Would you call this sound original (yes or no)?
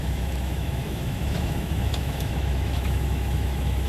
no